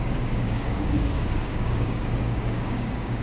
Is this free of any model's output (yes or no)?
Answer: no